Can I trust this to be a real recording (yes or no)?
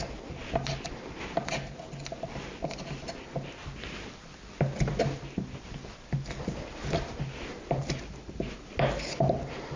yes